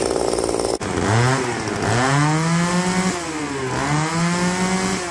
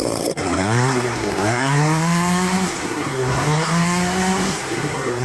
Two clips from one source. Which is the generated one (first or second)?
second